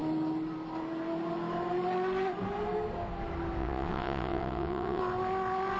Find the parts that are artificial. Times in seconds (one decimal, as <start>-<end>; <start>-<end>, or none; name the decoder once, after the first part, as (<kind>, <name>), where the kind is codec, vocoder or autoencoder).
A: 3.6-5.0 (vocoder, WaveNeXt)